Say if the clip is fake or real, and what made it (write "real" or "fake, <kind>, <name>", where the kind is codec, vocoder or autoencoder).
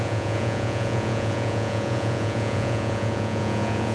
fake, vocoder, Vocos